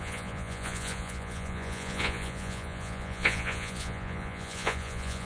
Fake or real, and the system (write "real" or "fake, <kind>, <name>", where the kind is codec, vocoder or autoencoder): fake, vocoder, Vocos